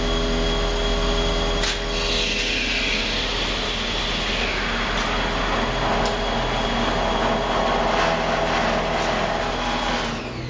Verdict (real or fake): real